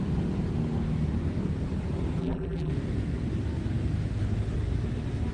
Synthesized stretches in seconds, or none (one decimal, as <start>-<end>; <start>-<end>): 2.2-2.7